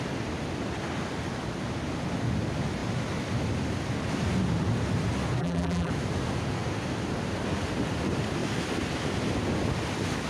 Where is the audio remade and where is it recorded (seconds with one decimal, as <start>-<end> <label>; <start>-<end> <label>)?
0.0-5.4 recorded; 5.4-5.9 remade; 5.9-10.3 recorded